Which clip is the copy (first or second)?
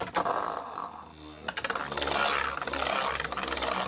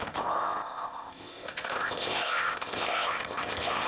second